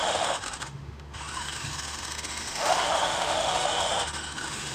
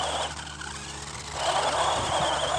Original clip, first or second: second